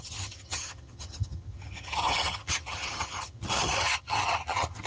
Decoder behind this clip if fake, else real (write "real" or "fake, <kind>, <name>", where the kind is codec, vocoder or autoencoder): fake, vocoder, HiFi-GAN